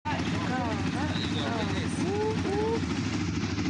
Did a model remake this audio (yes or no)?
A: no